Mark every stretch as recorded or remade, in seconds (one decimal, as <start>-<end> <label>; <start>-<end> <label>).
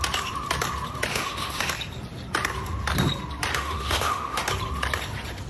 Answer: 0.0-1.1 recorded; 1.1-1.7 remade; 1.7-3.5 recorded; 3.5-4.5 remade; 4.5-5.5 recorded